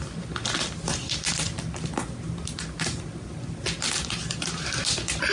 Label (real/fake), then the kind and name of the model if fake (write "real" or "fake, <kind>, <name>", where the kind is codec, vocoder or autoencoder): real